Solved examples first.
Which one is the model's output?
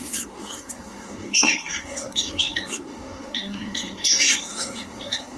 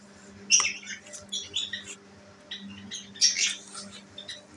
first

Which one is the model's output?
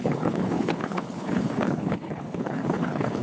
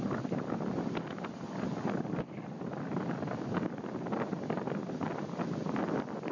first